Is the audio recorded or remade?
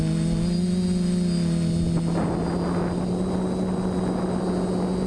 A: recorded